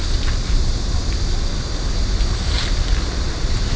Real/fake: real